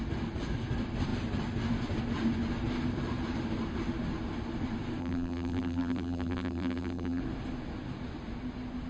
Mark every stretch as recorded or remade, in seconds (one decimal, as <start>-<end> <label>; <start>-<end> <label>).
0.0-5.0 recorded; 5.0-7.2 remade; 7.2-8.9 recorded

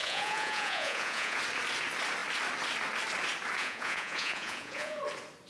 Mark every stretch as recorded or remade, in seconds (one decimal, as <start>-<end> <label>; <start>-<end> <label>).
0.0-1.4 remade; 1.4-3.6 recorded; 3.6-5.0 remade; 5.0-5.5 recorded

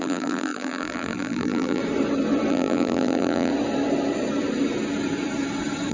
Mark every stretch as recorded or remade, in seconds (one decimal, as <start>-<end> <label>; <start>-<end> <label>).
0.0-1.8 remade; 1.8-2.5 recorded; 2.5-3.5 remade; 3.5-5.9 recorded